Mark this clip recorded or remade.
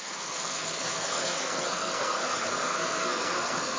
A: remade